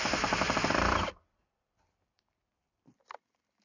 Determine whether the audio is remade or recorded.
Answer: remade